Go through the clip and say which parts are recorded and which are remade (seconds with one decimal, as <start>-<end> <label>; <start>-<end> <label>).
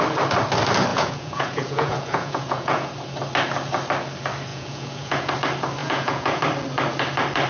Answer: 0.0-0.9 recorded; 0.9-2.9 remade; 2.9-4.5 recorded; 4.5-5.3 remade; 5.3-5.8 recorded; 5.8-6.4 remade; 6.4-7.5 recorded